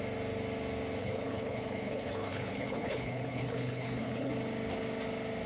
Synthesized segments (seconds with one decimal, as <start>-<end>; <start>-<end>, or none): 1.0-4.3